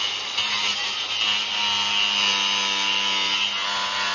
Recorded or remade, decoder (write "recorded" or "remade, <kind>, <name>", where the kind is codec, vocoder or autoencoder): recorded